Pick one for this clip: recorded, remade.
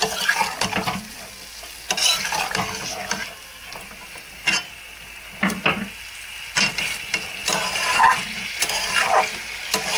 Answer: recorded